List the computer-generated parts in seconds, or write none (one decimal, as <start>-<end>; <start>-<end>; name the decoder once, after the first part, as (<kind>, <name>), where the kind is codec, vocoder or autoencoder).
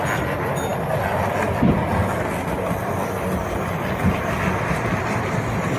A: none